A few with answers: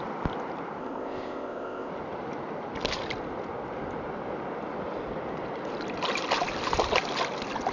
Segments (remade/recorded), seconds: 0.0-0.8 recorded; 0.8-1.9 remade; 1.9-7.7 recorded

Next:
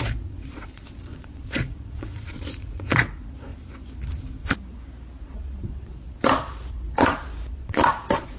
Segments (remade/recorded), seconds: 0.0-3.5 remade; 3.5-5.2 recorded; 5.2-8.4 remade

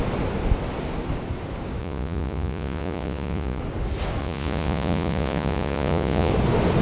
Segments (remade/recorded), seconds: 0.0-1.8 recorded; 1.8-3.6 remade; 3.6-4.2 recorded; 4.2-6.3 remade; 6.3-6.8 recorded

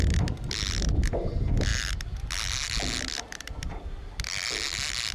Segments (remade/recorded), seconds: 0.0-5.1 recorded

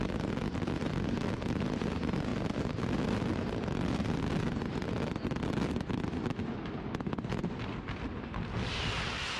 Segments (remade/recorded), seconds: 0.0-9.4 recorded

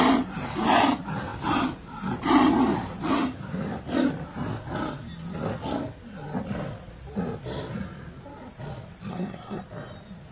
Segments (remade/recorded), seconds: 0.0-9.1 recorded; 9.1-9.6 remade; 9.6-10.3 recorded

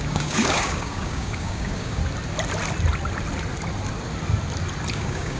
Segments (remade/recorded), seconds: 0.0-2.0 remade; 2.0-4.9 recorded; 4.9-5.4 remade

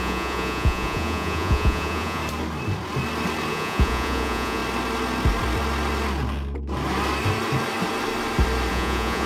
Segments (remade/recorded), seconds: 0.0-2.2 remade; 2.2-3.5 recorded; 3.5-4.6 remade; 4.6-8.7 recorded; 8.7-9.3 remade